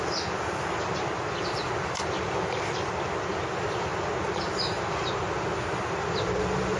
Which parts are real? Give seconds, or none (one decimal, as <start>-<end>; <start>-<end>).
0.0-6.8